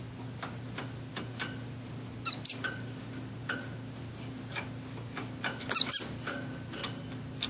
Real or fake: real